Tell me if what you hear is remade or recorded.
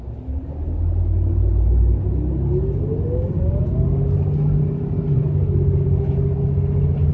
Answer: recorded